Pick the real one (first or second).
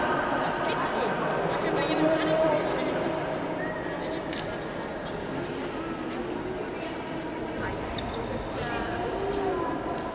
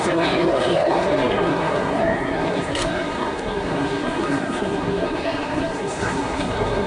first